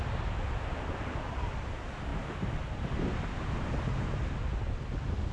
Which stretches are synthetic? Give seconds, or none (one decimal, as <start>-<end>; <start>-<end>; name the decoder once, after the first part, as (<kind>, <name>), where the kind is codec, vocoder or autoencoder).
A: none

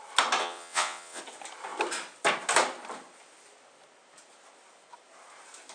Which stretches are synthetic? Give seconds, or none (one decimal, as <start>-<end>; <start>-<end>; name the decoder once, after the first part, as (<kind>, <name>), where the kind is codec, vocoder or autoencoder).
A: 0.4-1.2 (vocoder, WaveNeXt)

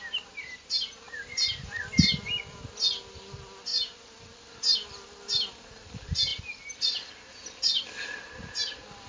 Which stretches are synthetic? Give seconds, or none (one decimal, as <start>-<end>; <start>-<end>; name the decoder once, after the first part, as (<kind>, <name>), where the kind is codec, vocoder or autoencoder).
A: none

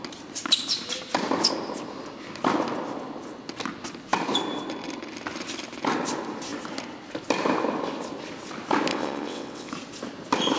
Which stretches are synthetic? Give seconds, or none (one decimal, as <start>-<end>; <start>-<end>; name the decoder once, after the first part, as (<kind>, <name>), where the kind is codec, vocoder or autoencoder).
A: 8.9-9.7 (vocoder, WaveNeXt)

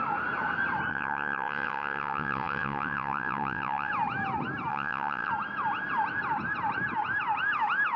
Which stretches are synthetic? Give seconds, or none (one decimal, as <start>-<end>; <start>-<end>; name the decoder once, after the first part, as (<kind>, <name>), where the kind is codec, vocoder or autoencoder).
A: 0.9-3.9 (vocoder, WaveNeXt); 4.7-5.3

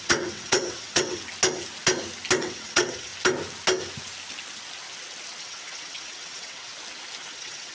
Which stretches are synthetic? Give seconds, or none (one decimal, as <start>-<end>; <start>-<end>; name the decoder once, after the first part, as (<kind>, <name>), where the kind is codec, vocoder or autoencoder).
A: 0.0-1.2 (vocoder, WaveNeXt); 2.4-3.1; 5.4-6.7; 7.3-7.7